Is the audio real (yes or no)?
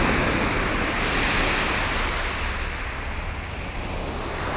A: yes